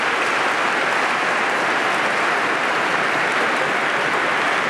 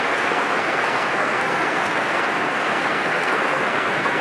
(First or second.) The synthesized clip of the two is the second